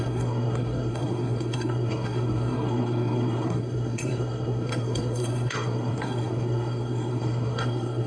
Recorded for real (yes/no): no